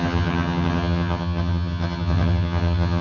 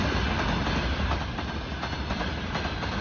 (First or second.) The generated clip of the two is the first